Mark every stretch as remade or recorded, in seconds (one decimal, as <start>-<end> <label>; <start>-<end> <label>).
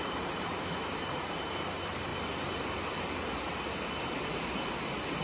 0.0-2.1 remade; 2.1-5.2 recorded